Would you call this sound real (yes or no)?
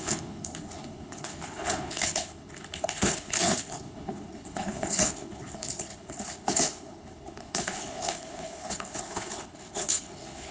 no